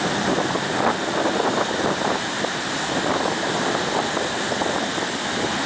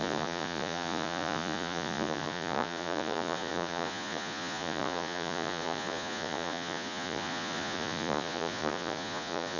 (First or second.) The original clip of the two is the first